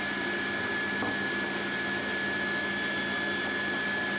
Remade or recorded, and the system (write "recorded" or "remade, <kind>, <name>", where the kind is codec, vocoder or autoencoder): recorded